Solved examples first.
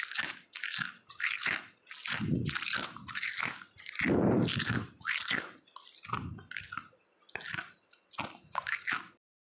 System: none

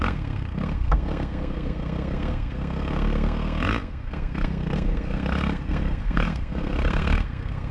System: codec, SNAC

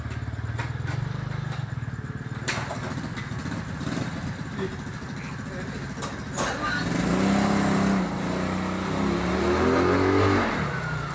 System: none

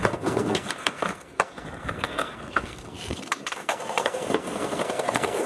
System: codec, SNAC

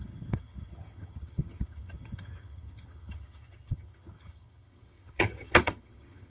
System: vocoder, HiFi-GAN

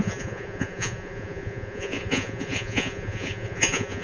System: vocoder, Vocos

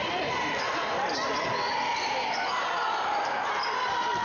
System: none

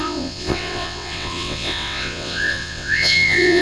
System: vocoder, WaveNeXt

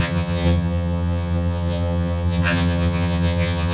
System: vocoder, HiFi-GAN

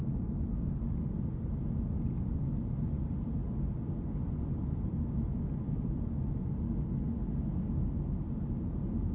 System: none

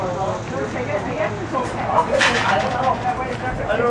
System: none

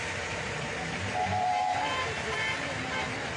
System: vocoder, BigVGAN v2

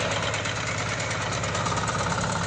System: vocoder, BigVGAN v2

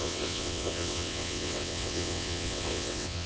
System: vocoder, WaveNeXt